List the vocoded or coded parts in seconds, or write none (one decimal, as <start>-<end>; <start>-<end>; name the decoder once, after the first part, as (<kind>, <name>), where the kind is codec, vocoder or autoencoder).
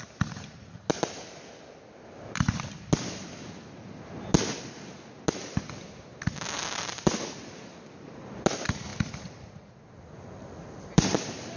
none